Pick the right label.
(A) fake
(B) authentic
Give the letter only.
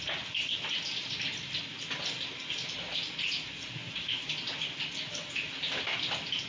B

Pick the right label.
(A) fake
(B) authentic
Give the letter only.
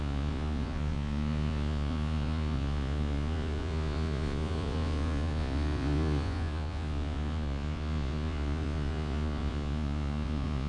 A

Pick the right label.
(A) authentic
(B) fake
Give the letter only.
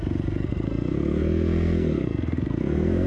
B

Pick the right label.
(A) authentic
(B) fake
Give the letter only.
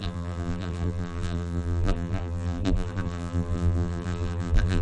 B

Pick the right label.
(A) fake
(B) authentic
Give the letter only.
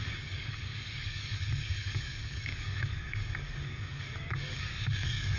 A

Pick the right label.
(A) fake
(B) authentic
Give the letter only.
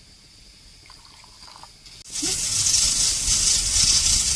B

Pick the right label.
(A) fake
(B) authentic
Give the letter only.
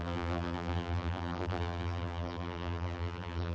A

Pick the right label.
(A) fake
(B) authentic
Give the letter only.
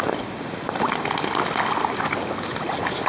B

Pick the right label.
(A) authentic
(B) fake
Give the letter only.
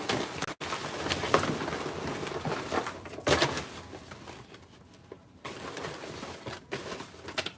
A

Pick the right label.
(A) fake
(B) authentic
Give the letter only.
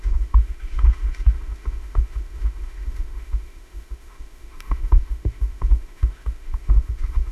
A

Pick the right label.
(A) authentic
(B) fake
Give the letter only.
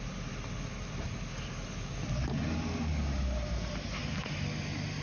A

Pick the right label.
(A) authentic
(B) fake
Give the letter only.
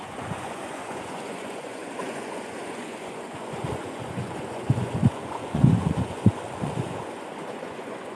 B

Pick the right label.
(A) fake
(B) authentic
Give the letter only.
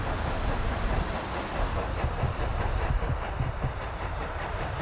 A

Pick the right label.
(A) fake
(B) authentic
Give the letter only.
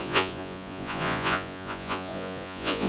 A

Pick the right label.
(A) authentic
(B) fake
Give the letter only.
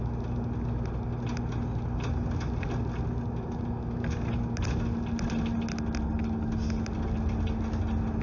A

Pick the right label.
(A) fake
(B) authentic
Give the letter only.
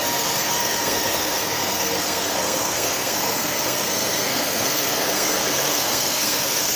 A